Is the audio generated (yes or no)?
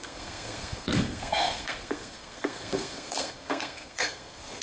yes